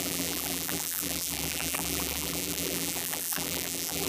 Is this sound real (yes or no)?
no